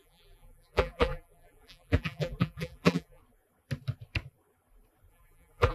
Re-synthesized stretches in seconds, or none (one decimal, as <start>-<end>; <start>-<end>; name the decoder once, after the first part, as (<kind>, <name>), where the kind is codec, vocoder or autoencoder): 0.0-3.2 (vocoder, BigVGAN v2); 5.1-5.7